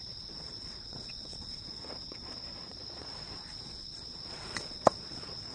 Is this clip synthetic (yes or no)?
yes